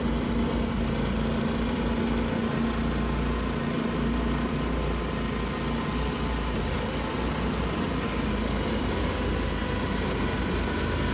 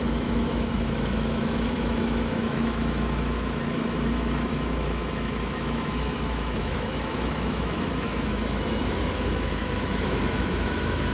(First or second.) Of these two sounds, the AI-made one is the second